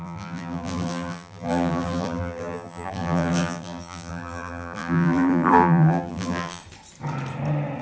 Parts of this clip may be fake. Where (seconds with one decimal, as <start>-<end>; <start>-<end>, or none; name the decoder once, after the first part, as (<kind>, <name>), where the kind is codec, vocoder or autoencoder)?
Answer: 0.0-6.6 (vocoder, BigVGAN v2)